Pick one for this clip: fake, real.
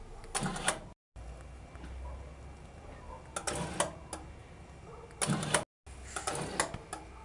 real